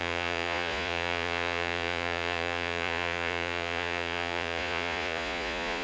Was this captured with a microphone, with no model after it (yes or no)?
no